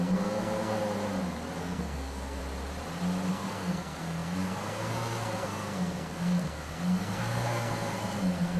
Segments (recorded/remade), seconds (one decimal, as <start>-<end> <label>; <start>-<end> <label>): 0.0-0.8 remade; 0.8-1.6 recorded; 1.6-2.4 remade; 2.4-3.3 recorded; 3.3-8.6 remade